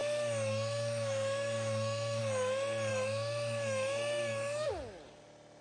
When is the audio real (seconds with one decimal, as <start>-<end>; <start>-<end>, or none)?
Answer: 2.2-2.9; 4.7-5.6